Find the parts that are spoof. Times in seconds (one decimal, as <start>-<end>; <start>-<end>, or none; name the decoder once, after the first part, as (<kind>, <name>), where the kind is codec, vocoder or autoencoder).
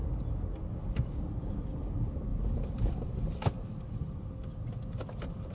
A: none